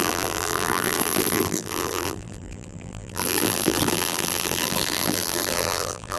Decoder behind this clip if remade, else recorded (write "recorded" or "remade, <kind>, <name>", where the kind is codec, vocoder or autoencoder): remade, vocoder, BigVGAN v2